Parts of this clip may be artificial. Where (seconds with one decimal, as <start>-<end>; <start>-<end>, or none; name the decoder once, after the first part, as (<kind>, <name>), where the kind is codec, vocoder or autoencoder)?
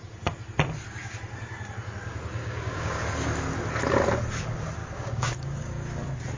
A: 2.4-3.0 (codec, DAC); 4.8-5.9